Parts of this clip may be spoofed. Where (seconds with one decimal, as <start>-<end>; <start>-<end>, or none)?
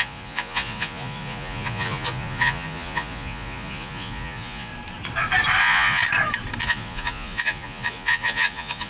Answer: 0.0-4.7; 5.6-6.0; 6.6-8.9